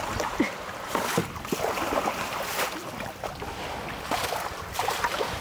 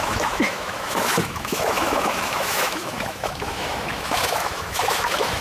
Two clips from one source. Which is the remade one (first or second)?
second